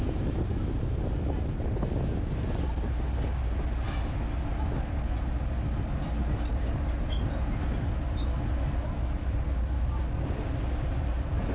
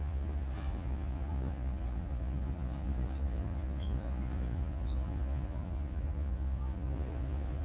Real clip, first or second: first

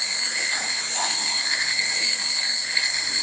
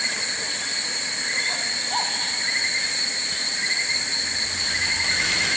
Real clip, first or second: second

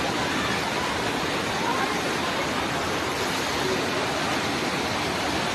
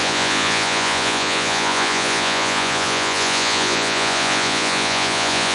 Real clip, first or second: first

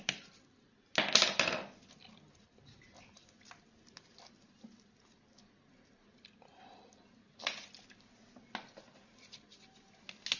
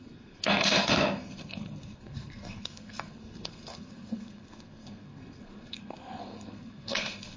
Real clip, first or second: first